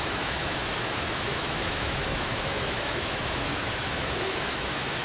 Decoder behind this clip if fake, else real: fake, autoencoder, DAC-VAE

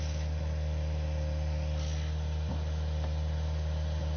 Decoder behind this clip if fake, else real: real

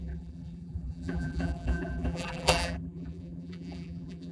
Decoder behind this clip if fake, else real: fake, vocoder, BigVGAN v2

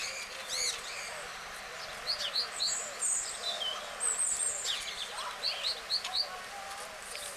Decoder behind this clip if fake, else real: real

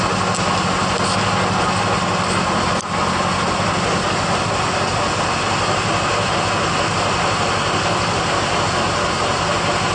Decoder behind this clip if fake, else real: real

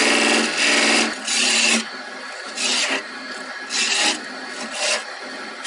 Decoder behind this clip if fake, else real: real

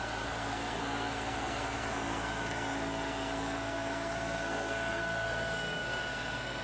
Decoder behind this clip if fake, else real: fake, codec, SNAC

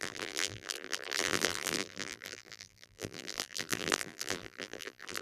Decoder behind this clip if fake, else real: fake, vocoder, BigVGAN v2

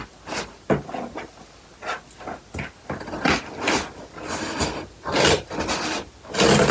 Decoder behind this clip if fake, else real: real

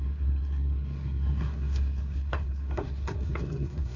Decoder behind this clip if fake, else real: fake, codec, SNAC